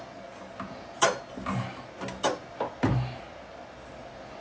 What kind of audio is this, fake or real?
real